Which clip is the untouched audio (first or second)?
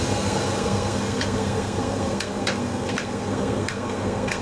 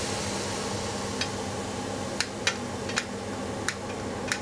second